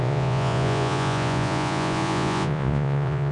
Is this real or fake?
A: fake